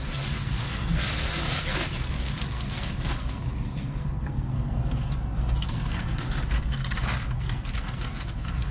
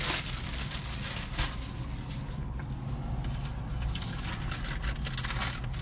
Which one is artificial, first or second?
first